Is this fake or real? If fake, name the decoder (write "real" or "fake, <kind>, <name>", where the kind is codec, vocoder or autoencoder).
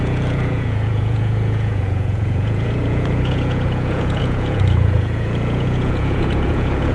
fake, vocoder, Vocos